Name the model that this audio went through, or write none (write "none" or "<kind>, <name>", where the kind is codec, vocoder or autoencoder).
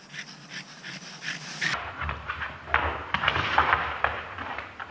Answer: none